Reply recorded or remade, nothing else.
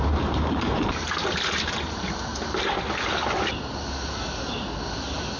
recorded